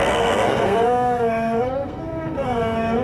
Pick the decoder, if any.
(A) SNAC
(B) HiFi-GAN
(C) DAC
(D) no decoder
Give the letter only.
A